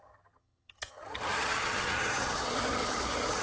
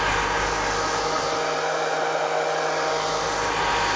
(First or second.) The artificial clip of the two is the first